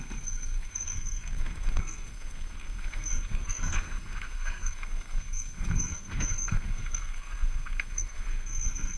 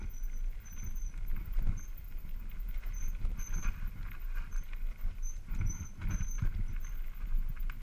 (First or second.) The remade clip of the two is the first